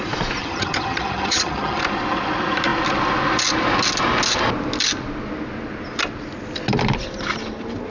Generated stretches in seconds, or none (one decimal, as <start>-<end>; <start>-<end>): 0.4-1.8